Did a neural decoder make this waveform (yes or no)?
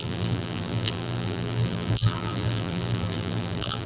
yes